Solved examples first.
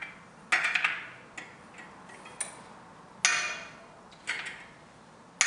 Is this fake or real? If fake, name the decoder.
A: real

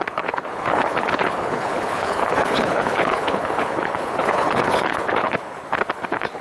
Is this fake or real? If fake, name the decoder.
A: fake, codec, HILCodec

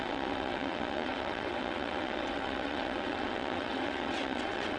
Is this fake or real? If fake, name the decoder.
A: fake, vocoder, WaveNeXt